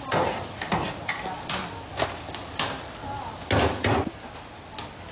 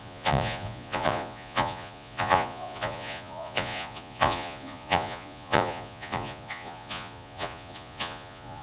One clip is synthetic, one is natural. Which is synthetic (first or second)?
second